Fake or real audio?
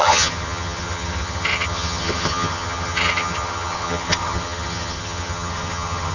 fake